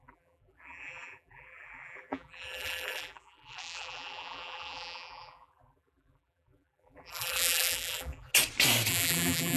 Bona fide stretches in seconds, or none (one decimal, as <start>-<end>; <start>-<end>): 8.3-8.9

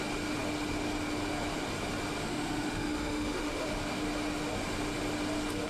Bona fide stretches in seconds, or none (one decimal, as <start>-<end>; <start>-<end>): 0.0-2.2; 3.7-5.7

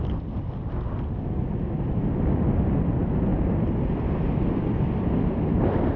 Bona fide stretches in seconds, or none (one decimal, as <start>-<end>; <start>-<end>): 0.0-6.0

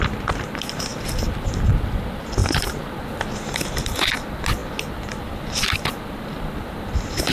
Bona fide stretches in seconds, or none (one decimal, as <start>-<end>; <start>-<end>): 0.0-7.3

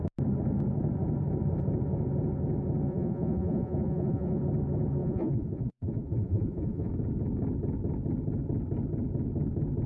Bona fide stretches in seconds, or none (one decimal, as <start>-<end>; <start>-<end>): 0.0-2.9; 4.4-5.0; 6.9-9.9

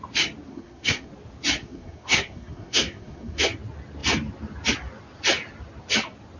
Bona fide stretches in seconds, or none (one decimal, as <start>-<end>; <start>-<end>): 0.0-0.5; 1.1-1.6; 3.4-6.4

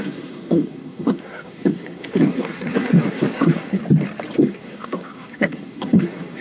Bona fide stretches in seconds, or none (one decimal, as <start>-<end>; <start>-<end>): 3.8-4.4